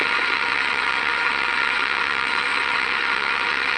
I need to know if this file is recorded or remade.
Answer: remade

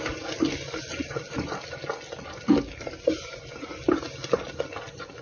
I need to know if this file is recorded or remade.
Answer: recorded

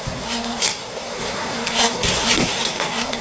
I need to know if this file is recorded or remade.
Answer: remade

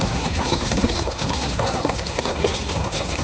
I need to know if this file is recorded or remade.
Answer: remade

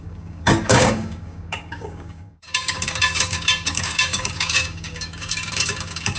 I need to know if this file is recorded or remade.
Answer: remade